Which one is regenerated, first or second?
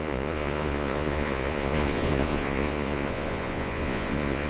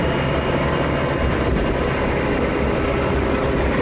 first